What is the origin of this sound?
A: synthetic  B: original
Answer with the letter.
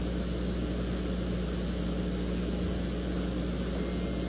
B